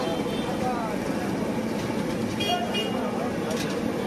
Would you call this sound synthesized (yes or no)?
no